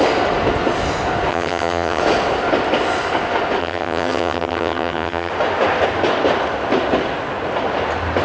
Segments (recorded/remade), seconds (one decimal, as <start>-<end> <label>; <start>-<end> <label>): 0.0-1.3 recorded; 1.3-2.0 remade; 2.0-3.6 recorded; 3.6-5.3 remade; 5.3-8.2 recorded